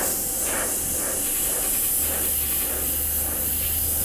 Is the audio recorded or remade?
recorded